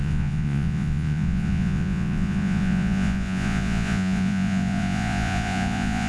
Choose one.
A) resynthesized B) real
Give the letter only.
A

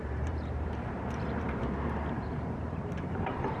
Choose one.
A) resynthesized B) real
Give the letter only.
A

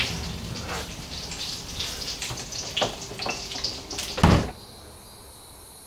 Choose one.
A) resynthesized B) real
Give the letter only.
B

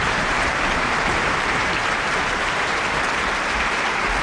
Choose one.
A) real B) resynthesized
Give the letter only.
B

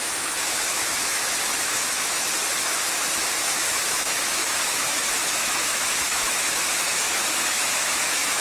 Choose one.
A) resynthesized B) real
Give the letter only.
A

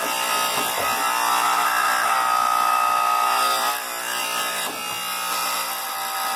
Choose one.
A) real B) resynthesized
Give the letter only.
A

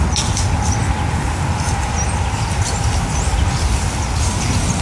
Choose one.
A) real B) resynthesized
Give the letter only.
A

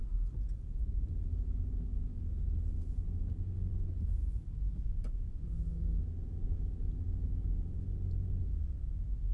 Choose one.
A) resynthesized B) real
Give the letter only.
B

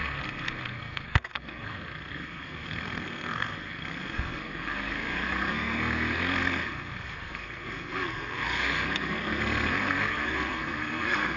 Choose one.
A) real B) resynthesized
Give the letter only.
B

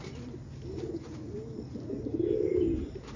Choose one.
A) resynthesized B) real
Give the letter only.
B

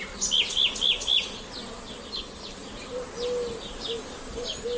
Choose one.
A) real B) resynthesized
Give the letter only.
A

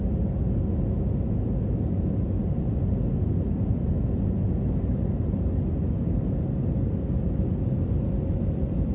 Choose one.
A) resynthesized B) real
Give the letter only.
B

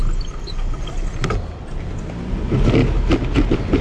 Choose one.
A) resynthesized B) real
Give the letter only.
B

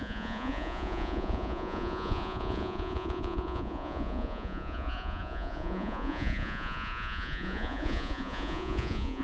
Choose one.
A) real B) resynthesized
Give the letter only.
B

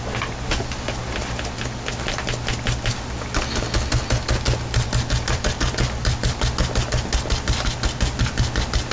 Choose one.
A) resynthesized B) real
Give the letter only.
B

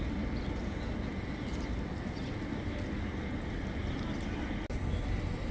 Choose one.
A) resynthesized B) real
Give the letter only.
B